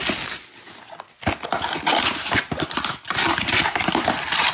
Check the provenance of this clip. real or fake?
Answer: real